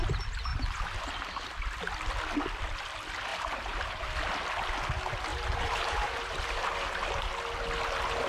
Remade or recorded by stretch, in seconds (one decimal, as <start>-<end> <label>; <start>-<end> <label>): 0.0-0.5 recorded; 0.5-1.1 remade; 1.1-3.3 recorded; 3.3-4.0 remade; 4.0-5.3 recorded; 5.3-6.4 remade; 6.4-8.3 recorded